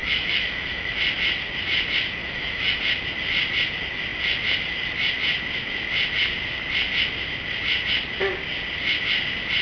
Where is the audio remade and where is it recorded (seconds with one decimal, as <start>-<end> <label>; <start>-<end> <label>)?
0.0-0.9 remade; 0.9-2.2 recorded; 2.2-2.8 remade; 2.8-9.6 recorded